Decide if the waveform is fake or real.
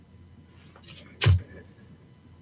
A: real